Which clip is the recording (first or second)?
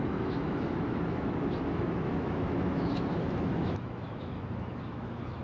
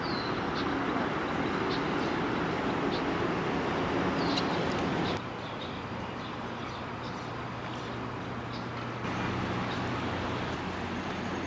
second